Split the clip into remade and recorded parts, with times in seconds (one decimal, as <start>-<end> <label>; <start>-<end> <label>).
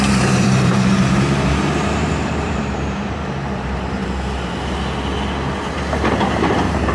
0.0-4.0 remade; 4.0-5.7 recorded; 5.7-6.9 remade